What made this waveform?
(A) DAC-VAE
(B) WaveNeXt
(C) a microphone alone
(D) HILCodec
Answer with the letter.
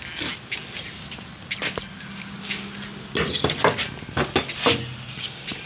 C